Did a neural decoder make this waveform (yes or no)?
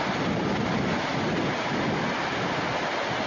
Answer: no